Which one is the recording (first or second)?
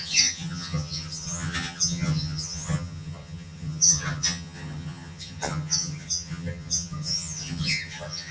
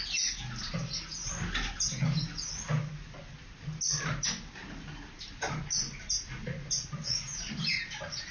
second